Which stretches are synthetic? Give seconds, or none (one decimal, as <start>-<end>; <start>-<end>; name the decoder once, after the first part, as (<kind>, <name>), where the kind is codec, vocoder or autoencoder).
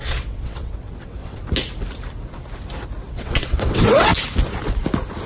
0.0-1.4 (vocoder, WaveNeXt); 3.1-4.1